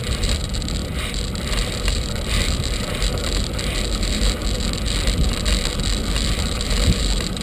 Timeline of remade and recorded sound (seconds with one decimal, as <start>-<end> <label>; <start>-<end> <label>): 0.0-0.8 remade; 0.8-1.8 recorded; 1.8-4.4 remade; 4.4-6.4 recorded; 6.4-7.4 remade